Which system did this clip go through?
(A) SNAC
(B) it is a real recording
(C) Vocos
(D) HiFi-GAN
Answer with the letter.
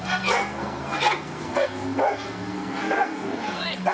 A